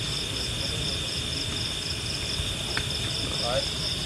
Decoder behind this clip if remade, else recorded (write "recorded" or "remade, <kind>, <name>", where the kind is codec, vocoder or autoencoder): recorded